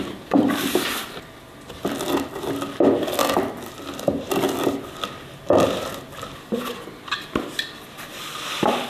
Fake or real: real